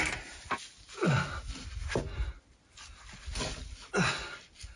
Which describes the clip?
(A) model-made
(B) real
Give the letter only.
B